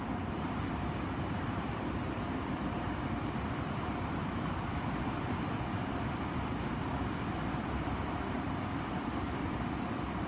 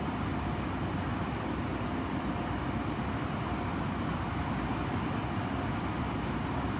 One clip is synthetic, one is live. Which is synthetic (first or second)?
first